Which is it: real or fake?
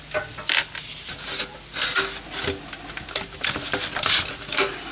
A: real